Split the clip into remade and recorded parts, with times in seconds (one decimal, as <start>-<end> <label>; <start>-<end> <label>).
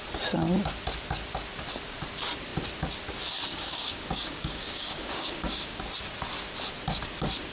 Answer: 0.0-3.5 recorded; 3.5-5.8 remade; 5.8-7.5 recorded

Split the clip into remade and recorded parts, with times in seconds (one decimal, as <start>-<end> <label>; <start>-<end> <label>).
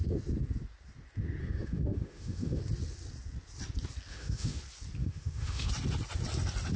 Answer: 0.0-1.4 recorded; 1.4-2.6 remade; 2.6-4.1 recorded; 4.1-4.6 remade; 4.6-5.0 recorded; 5.0-5.7 remade; 5.7-6.8 recorded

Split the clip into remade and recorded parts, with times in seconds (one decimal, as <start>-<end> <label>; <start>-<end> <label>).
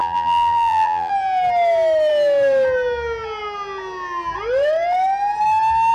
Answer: 0.0-1.1 remade; 1.1-5.9 recorded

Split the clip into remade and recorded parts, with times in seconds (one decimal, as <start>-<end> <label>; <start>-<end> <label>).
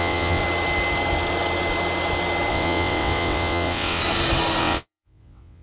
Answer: 0.0-0.4 remade; 0.4-2.5 recorded; 2.5-4.0 remade; 4.0-4.6 recorded; 4.6-5.6 remade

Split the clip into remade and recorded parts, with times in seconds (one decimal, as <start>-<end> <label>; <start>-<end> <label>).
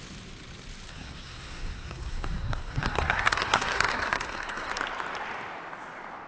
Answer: 0.0-0.9 recorded; 0.9-4.7 remade; 4.7-6.3 recorded